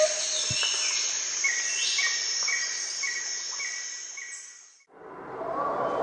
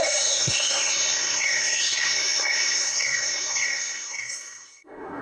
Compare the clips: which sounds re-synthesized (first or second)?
second